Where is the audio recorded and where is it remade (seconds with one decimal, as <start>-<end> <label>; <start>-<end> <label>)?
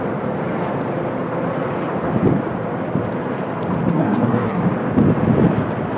0.0-3.9 recorded; 3.9-4.6 remade; 4.6-6.0 recorded